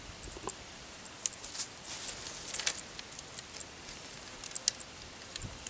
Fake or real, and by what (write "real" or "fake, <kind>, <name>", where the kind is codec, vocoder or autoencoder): real